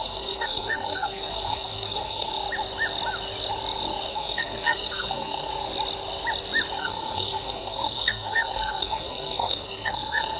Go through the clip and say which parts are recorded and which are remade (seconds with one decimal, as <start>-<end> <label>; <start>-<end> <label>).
0.0-2.3 remade; 2.3-4.1 recorded; 4.1-5.5 remade; 5.5-6.8 recorded; 6.8-10.4 remade